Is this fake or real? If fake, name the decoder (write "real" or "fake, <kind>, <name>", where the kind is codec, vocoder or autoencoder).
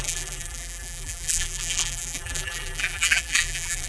fake, vocoder, BigVGAN v2